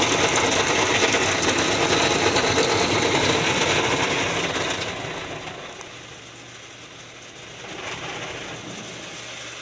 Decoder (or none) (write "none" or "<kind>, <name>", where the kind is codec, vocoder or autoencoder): none